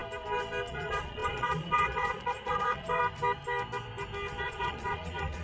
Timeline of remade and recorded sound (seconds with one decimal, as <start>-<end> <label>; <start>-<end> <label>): 0.0-0.7 recorded; 0.7-3.0 remade; 3.0-4.4 recorded; 4.4-5.4 remade